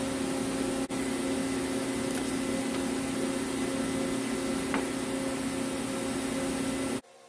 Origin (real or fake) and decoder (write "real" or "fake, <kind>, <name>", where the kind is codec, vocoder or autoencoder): real